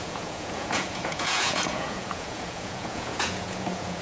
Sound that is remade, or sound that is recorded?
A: remade